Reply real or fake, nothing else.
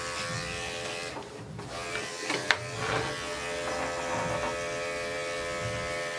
real